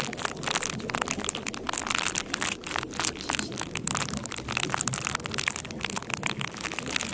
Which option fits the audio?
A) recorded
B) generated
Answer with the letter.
A